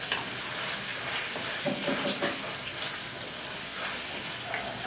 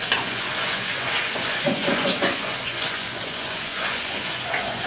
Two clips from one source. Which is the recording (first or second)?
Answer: first